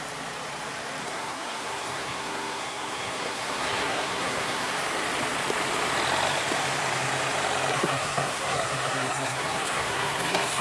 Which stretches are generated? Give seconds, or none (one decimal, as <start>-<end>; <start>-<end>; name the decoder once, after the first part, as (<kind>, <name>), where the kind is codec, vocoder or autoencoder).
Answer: 1.0-4.7 (codec, SNAC); 7.7-10.6